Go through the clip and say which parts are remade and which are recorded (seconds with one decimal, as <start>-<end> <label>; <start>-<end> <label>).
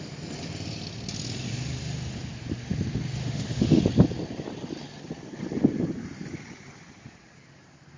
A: 0.0-3.2 recorded; 3.2-3.8 remade; 3.8-8.0 recorded